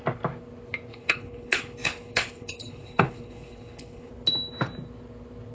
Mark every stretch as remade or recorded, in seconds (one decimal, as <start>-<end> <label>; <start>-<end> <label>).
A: 0.0-0.9 recorded; 0.9-4.1 remade; 4.1-5.5 recorded